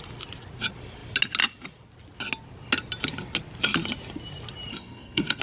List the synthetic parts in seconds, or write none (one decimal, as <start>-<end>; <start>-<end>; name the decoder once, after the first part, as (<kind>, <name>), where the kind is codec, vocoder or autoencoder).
4.7-5.4 (codec, SNAC)